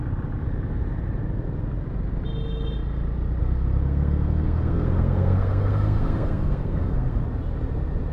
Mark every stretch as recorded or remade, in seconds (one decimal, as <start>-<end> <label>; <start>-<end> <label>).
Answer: 0.0-3.4 recorded; 3.4-7.2 remade; 7.2-8.1 recorded